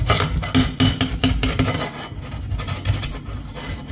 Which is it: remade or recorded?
recorded